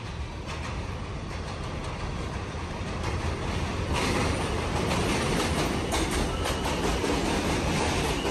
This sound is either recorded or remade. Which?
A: recorded